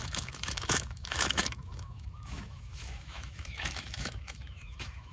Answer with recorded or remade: remade